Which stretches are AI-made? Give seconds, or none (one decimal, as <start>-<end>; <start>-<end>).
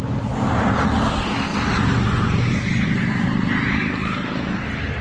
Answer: 1.5-3.9